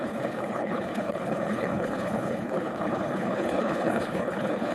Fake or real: fake